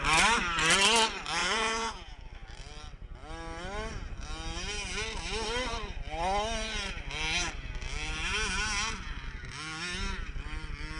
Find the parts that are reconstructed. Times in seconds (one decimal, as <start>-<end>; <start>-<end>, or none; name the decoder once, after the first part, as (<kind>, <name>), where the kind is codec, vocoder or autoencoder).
1.4-2.2 (vocoder, Vocos)